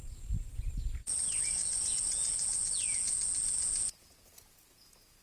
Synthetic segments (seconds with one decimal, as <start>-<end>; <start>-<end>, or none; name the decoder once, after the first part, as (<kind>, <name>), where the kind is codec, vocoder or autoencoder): 0.0-5.2 (vocoder, Vocos)